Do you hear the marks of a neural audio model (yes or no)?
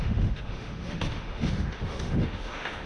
yes